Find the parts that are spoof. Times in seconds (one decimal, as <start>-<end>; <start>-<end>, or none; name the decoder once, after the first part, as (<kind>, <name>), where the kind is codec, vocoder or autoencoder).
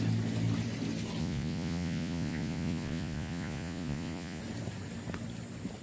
1.2-4.4 (vocoder, Vocos)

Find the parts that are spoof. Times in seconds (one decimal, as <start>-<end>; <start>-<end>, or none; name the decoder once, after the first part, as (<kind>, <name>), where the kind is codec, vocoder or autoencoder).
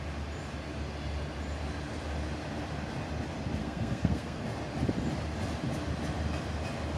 3.6-4.4 (codec, SNAC)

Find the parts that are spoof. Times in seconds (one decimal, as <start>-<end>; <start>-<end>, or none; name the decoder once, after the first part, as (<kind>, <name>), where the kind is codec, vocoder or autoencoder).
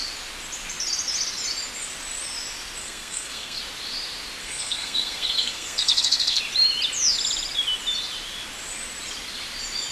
2.8-3.6 (codec, SNAC); 4.4-6.4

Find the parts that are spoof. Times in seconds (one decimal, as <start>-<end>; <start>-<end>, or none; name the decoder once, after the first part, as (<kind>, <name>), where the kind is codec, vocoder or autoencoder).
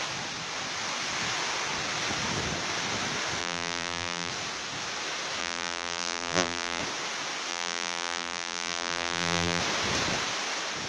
3.4-4.3 (vocoder, BigVGAN v2); 5.4-6.8; 7.5-9.6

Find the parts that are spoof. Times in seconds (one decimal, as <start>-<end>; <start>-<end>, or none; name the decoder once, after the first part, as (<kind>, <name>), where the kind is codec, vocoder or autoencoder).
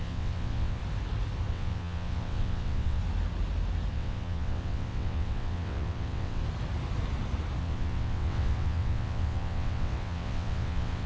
0.0-0.8 (vocoder, WaveNeXt); 1.5-3.0; 3.9-6.4; 7.6-11.1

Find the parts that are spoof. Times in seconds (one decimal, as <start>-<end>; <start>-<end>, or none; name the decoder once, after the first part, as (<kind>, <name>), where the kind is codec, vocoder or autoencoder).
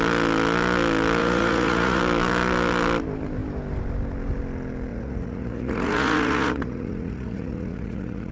1.2-2.0 (vocoder, Vocos); 4.9-8.3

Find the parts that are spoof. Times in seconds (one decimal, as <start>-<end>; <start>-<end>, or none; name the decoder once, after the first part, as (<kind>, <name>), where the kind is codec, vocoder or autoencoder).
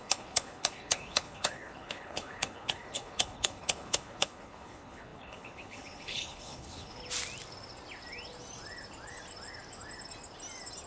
0.0-7.0 (codec, HILCodec)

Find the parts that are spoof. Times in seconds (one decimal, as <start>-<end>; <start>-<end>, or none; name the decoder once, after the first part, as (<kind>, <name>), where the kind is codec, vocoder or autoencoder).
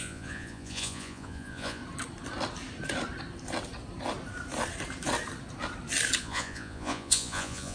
0.0-1.8 (vocoder, Vocos); 6.2-7.7